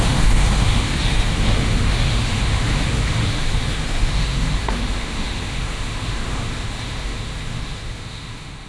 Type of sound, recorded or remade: remade